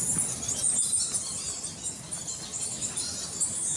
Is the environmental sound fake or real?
real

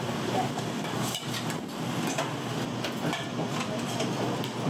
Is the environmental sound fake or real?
real